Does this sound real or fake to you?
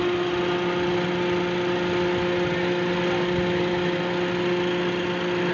real